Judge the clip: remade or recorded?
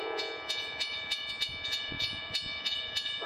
remade